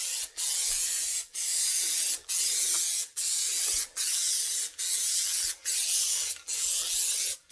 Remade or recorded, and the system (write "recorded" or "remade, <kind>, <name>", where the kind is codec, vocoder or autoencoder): remade, vocoder, BigVGAN v2